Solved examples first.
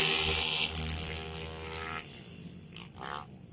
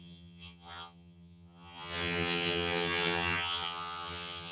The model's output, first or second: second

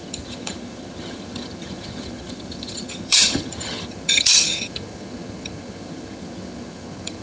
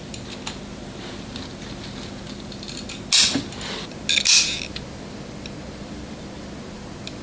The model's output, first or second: first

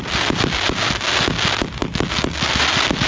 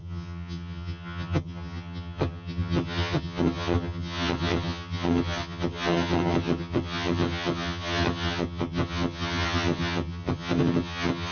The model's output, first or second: second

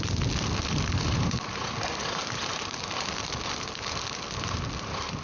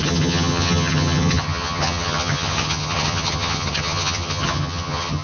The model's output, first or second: second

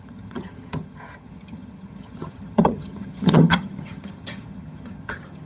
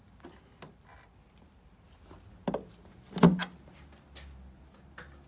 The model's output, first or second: first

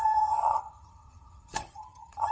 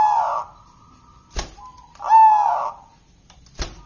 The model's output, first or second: first